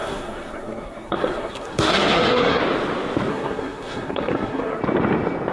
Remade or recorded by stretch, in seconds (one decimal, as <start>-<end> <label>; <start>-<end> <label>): 0.0-2.6 remade; 2.6-3.3 recorded; 3.3-4.8 remade; 4.8-5.5 recorded